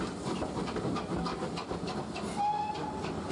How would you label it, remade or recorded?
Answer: recorded